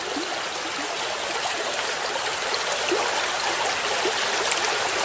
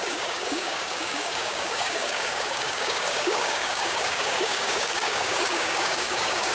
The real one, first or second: first